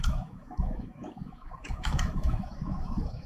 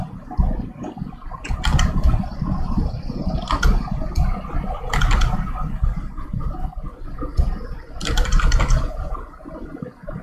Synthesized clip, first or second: first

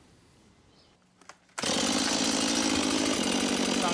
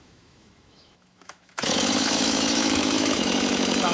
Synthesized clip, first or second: second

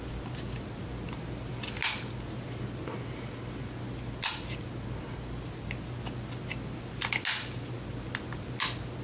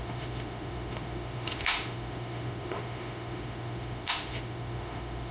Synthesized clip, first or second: second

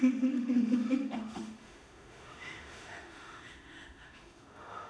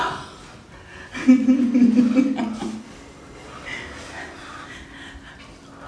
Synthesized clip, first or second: first